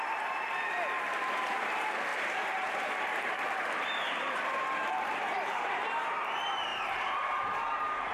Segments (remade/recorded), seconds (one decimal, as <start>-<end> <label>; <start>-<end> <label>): 0.0-2.1 recorded; 2.1-6.0 remade; 6.0-6.7 recorded; 6.7-8.1 remade